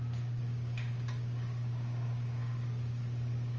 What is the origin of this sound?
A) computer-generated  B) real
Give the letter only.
A